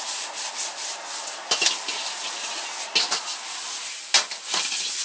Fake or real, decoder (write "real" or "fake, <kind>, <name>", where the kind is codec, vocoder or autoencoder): real